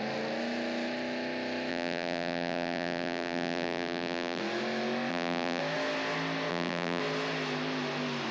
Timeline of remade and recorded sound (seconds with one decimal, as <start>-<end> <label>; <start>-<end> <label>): 0.0-1.7 recorded; 1.7-4.4 remade; 4.4-5.1 recorded; 5.1-5.6 remade; 5.6-6.5 recorded; 6.5-7.0 remade; 7.0-8.3 recorded